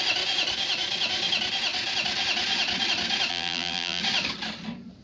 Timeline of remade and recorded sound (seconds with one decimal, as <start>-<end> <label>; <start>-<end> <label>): 0.0-3.3 recorded; 3.3-4.0 remade; 4.0-5.0 recorded